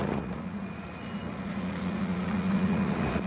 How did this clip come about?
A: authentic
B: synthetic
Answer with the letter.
B